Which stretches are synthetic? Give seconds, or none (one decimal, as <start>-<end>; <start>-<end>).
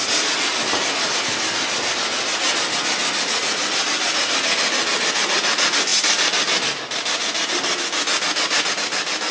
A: none